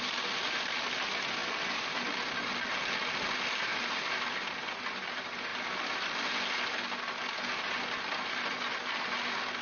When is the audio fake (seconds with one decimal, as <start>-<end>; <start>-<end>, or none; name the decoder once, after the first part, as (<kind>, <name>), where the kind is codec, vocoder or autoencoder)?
none

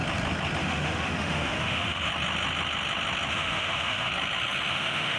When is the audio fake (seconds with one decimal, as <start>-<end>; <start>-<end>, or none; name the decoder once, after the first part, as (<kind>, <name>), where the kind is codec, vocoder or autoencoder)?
0.6-2.1 (autoencoder, DAC-VAE); 3.3-4.1; 4.7-5.2